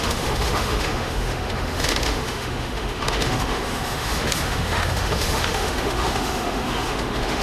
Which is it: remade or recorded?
remade